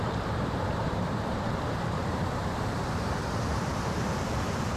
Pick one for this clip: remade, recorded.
remade